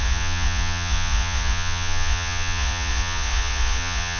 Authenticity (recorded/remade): remade